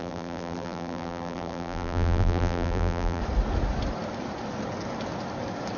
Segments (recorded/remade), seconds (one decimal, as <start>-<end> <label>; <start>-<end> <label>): 0.0-3.2 remade; 3.2-5.8 recorded